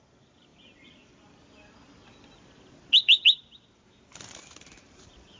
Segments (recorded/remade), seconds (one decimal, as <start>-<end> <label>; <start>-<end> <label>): 0.0-5.4 recorded